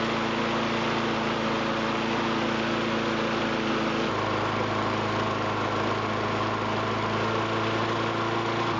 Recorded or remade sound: recorded